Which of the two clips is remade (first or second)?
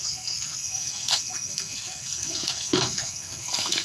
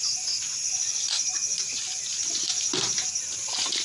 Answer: first